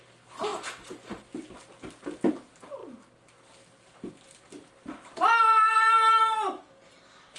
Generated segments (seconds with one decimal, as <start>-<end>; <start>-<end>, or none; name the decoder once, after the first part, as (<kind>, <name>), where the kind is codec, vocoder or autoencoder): none